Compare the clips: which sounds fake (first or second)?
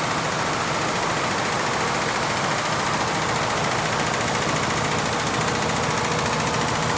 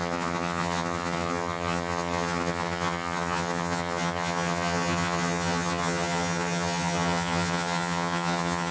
second